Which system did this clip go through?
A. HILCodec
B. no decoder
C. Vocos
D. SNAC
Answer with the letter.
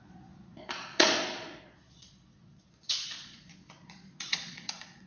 C